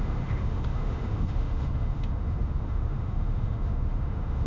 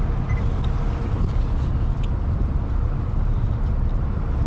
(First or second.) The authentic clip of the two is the second